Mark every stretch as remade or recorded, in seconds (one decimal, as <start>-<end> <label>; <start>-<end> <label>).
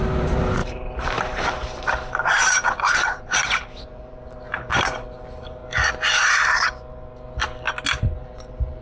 0.0-5.6 remade; 5.6-8.0 recorded; 8.0-8.8 remade